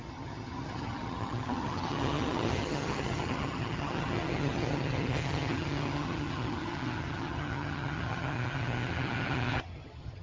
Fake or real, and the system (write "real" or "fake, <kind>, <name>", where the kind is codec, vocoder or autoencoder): fake, vocoder, HiFi-GAN